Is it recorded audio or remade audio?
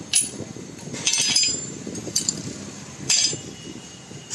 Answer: remade